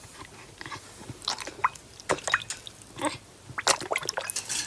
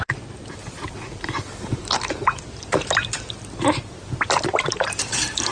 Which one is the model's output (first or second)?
second